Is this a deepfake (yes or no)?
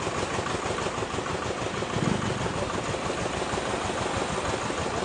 no